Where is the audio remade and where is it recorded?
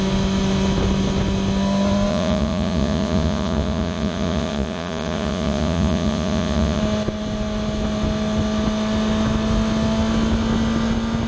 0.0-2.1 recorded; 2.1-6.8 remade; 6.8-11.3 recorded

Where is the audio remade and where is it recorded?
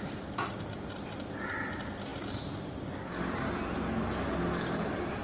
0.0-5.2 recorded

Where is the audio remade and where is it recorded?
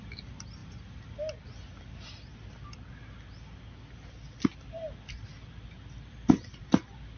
0.0-7.2 recorded